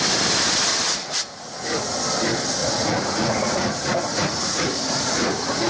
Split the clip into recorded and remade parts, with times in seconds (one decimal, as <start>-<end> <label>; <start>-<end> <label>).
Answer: 0.0-0.7 recorded; 0.7-2.0 remade; 2.0-2.6 recorded; 2.6-5.7 remade